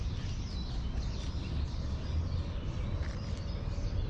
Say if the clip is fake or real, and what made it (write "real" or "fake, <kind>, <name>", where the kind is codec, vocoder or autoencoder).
real